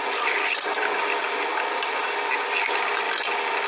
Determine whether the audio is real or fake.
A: real